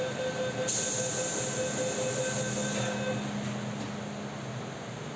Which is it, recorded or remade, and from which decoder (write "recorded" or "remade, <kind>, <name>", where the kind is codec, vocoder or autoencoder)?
recorded